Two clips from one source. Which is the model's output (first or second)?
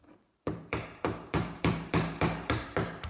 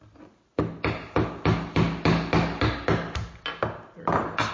first